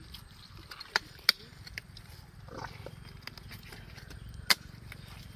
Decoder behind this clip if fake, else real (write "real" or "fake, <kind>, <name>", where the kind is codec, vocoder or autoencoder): real